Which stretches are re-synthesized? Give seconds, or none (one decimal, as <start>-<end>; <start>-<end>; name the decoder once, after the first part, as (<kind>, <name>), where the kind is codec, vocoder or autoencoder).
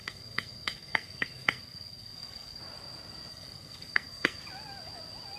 0.0-2.6 (codec, SNAC); 3.3-4.4